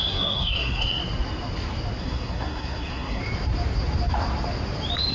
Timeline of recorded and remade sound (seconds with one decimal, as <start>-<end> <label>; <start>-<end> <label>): 0.0-1.0 remade; 1.0-2.0 recorded; 2.0-3.2 remade; 3.2-5.1 recorded